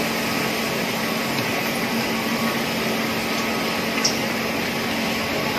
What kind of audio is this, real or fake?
real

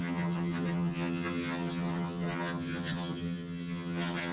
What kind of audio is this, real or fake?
fake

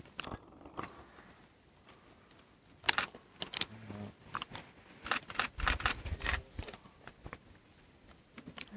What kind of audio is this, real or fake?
real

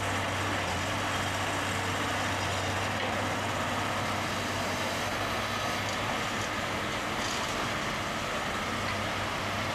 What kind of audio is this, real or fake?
real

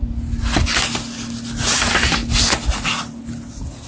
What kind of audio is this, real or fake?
real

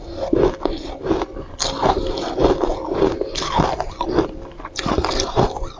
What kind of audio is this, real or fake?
real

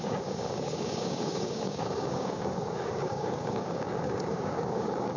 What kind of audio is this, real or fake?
fake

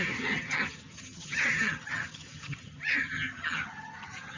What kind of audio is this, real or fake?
fake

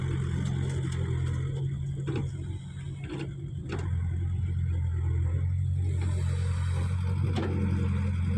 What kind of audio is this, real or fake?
real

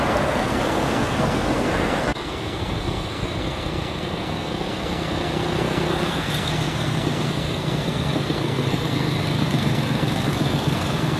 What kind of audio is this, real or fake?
fake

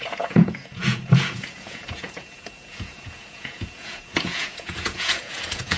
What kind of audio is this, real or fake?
fake